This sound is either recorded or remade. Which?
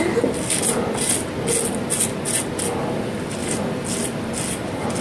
recorded